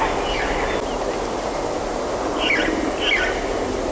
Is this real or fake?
real